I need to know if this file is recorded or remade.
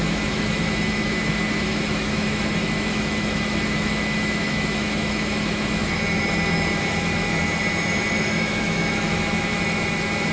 remade